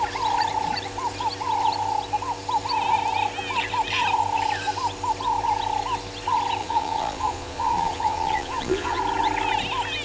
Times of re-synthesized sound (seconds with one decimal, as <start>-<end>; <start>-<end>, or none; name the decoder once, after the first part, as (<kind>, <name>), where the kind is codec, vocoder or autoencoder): 6.6-9.0 (vocoder, Vocos)